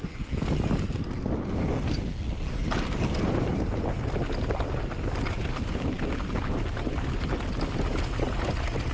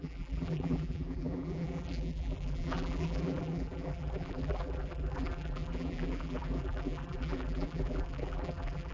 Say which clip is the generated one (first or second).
second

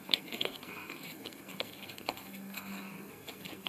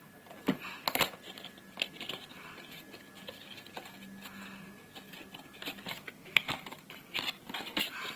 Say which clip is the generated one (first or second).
first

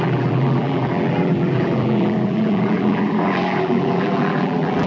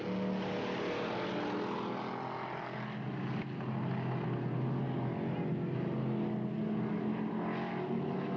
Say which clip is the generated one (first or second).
first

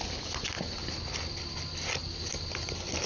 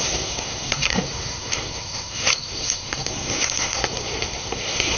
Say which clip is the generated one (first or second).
second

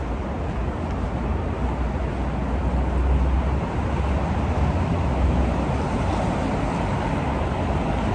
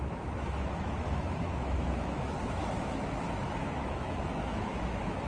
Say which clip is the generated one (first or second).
second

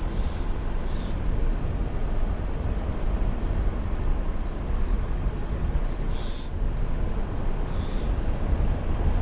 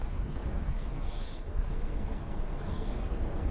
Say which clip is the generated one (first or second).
second